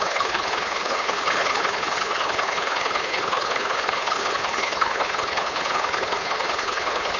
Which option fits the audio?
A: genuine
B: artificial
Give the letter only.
B